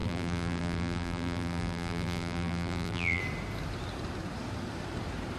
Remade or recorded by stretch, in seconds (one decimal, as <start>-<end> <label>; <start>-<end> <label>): 0.0-3.2 remade; 3.2-5.4 recorded